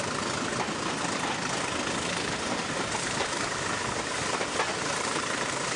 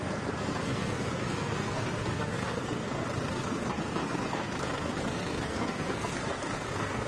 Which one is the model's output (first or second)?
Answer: second